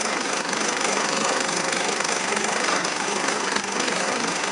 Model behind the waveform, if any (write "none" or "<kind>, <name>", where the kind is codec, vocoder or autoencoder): codec, SNAC